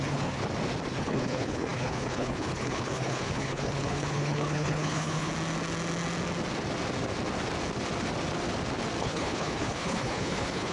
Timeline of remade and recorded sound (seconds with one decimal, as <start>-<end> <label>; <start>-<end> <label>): 0.0-0.4 remade; 0.4-1.0 recorded; 1.0-5.3 remade; 5.3-9.0 recorded; 9.0-10.7 remade